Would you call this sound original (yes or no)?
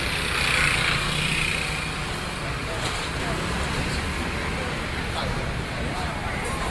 yes